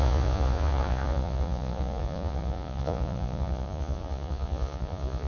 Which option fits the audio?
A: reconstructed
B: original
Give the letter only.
A